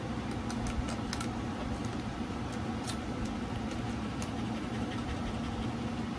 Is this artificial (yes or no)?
no